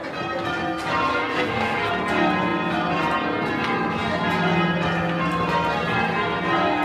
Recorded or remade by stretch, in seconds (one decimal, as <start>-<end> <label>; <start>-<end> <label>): 0.0-1.1 recorded; 1.1-1.9 remade; 1.9-6.8 recorded

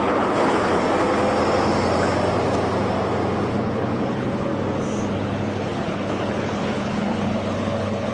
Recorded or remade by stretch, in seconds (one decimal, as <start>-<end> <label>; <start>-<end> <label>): 0.0-0.8 remade; 0.8-3.5 recorded; 3.5-4.5 remade; 4.5-5.1 recorded; 5.1-8.1 remade

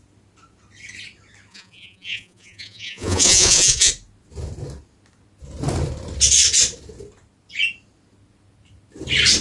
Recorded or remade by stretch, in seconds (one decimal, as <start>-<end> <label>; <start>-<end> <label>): 0.0-1.5 recorded; 1.5-3.9 remade; 3.9-9.4 recorded